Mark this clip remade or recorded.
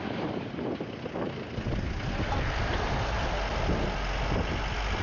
recorded